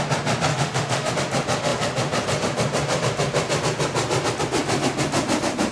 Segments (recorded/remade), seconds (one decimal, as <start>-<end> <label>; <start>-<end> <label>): 0.0-0.5 recorded; 0.5-1.1 remade; 1.1-5.7 recorded